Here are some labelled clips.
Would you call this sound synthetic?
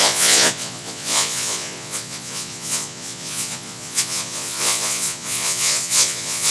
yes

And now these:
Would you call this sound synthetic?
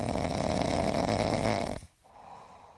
no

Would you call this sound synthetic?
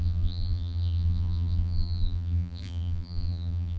yes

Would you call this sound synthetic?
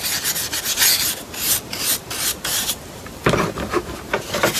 no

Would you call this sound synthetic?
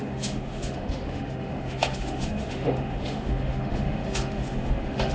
yes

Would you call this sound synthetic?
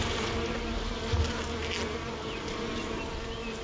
no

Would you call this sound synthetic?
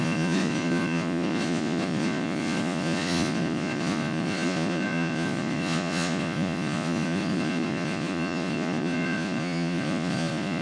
yes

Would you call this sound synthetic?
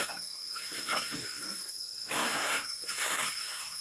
yes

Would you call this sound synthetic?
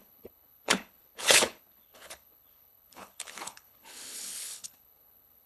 yes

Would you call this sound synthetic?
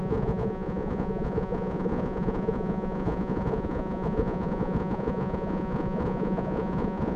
yes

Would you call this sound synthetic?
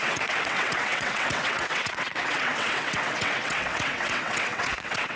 yes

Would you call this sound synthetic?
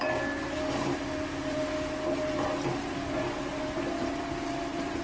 yes